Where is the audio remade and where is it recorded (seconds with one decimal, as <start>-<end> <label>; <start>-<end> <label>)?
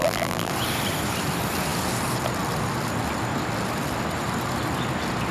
0.0-0.5 remade; 0.5-5.3 recorded